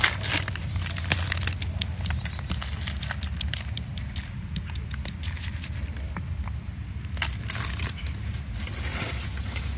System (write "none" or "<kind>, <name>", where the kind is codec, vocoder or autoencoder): none